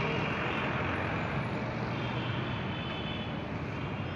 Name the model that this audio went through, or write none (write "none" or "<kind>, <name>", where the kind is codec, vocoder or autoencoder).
none